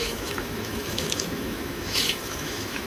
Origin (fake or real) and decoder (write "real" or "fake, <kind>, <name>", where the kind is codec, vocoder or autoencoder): fake, autoencoder, DAC-VAE